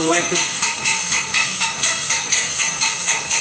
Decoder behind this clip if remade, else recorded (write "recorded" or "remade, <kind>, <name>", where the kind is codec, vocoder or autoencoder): remade, codec, SNAC